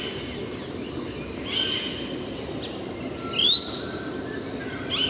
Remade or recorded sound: recorded